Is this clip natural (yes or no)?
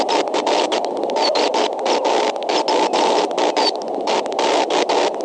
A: yes